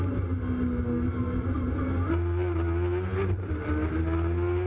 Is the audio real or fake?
real